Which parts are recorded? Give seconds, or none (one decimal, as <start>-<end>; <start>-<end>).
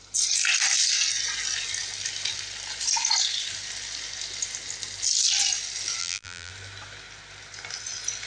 0.0-6.0; 6.5-8.3